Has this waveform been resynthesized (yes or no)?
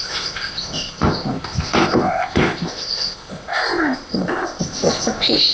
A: yes